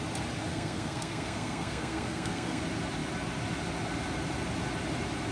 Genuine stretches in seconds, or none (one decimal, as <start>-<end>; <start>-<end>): 0.0-0.5; 2.6-5.3